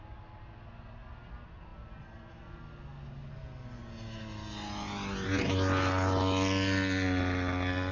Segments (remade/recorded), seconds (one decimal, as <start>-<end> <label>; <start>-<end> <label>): 0.0-7.9 recorded